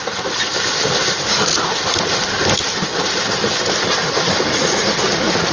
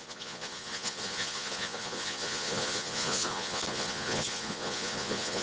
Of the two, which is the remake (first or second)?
second